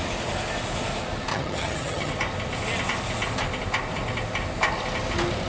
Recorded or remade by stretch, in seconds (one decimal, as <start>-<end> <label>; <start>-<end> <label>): 0.0-1.3 recorded; 1.3-2.1 remade; 2.1-5.5 recorded